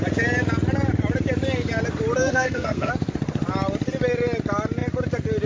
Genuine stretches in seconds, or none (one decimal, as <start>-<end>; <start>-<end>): 0.0-2.2; 2.9-5.5